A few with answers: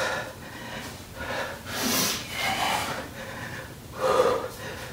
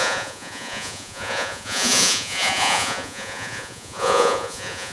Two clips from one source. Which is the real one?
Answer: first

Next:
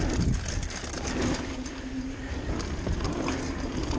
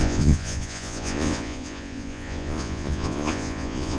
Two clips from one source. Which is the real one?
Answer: first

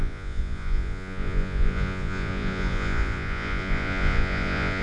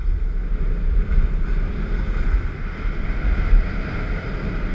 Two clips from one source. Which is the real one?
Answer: second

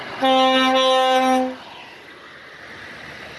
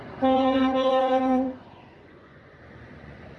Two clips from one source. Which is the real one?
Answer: first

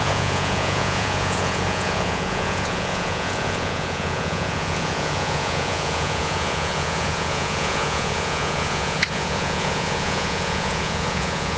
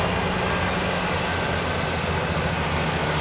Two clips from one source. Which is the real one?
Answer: second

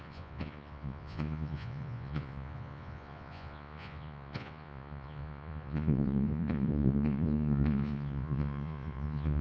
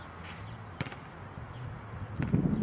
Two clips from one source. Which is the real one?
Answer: second